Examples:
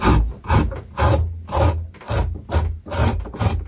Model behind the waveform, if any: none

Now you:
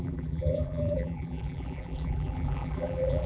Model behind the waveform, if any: vocoder, BigVGAN v2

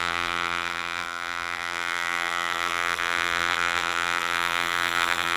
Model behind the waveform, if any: vocoder, BigVGAN v2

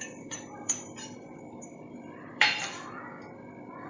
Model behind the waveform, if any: vocoder, BigVGAN v2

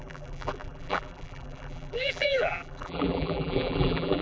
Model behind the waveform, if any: vocoder, BigVGAN v2